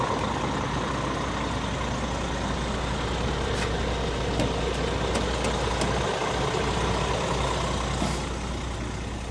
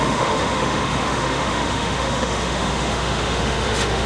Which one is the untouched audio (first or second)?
first